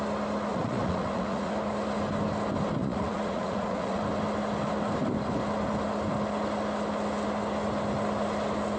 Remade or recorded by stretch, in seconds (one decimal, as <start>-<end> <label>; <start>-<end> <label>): 0.0-0.5 recorded; 0.5-1.5 remade; 1.5-2.8 recorded; 2.8-4.0 remade; 4.0-8.8 recorded